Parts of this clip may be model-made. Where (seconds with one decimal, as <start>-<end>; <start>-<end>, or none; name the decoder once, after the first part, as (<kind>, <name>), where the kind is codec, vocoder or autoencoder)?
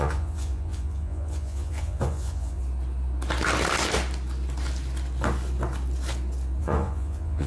0.0-2.6 (vocoder, Vocos); 6.6-7.5